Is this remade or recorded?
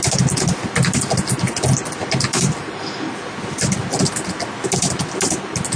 recorded